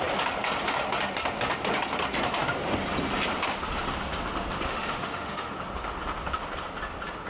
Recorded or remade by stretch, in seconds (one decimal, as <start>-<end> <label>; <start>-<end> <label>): 0.0-4.7 recorded; 4.7-5.5 remade; 5.5-7.3 recorded